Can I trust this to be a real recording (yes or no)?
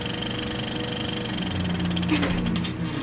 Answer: yes